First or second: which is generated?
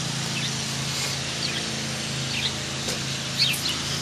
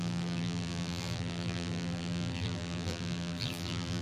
second